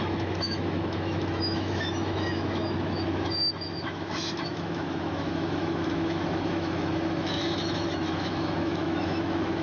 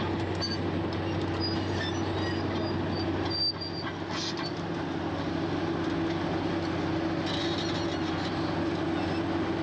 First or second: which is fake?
first